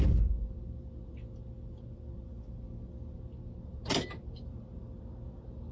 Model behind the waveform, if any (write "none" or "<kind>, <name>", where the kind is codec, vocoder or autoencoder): none